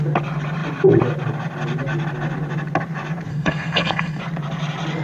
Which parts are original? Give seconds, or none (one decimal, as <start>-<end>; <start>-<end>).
0.0-3.3; 4.2-5.0